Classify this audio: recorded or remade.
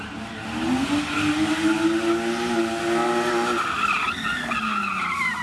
recorded